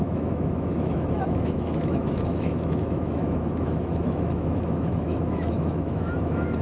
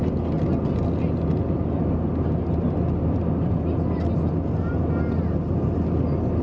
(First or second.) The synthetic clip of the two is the first